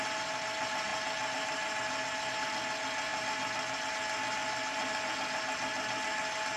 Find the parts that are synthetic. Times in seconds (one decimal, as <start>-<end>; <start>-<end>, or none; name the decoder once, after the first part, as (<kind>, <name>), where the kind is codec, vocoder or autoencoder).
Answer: none